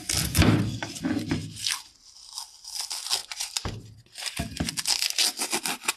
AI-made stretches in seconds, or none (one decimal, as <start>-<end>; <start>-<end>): none